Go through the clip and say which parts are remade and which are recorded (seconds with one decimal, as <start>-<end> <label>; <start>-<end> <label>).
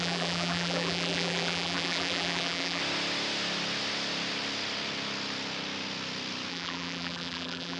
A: 0.0-2.8 remade; 2.8-6.5 recorded; 6.5-7.8 remade